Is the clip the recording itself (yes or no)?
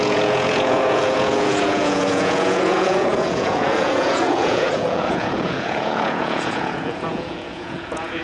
no